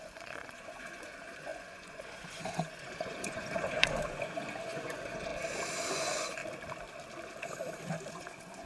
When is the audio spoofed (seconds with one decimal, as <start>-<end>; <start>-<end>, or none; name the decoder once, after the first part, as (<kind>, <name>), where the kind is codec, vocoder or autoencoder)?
0.0-5.3 (vocoder, Vocos); 5.9-6.4; 8.1-8.7